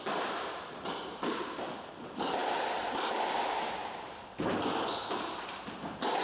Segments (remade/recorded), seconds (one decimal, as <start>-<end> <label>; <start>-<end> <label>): 0.0-6.2 recorded